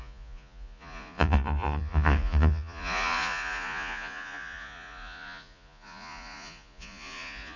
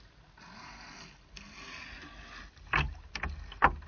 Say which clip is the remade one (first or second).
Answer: first